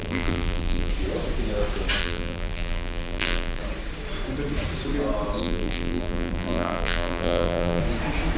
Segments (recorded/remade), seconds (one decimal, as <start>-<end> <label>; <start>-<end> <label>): 0.0-0.9 remade; 0.9-2.0 recorded; 2.0-3.6 remade; 3.6-5.4 recorded; 5.4-7.8 remade; 7.8-8.4 recorded